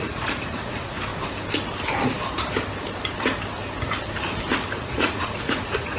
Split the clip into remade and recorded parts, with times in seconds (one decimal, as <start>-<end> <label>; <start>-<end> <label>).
0.0-1.1 remade; 1.1-4.7 recorded; 4.7-6.0 remade